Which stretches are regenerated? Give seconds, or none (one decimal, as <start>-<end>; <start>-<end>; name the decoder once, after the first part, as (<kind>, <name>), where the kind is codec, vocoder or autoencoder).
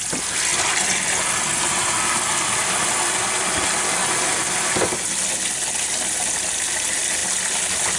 none